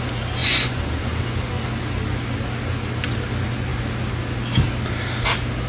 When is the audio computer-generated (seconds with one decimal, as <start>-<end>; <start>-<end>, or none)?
0.4-1.2